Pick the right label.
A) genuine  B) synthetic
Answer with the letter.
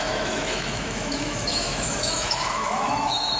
B